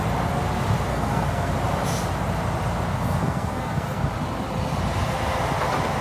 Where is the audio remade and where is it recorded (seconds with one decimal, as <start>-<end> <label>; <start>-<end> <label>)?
0.0-0.9 recorded; 0.9-1.5 remade; 1.5-2.9 recorded; 2.9-4.1 remade; 4.1-6.0 recorded